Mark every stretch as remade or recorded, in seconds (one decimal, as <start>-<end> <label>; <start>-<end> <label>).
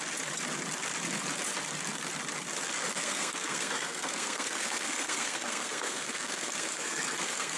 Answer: 0.0-2.9 recorded; 2.9-7.6 remade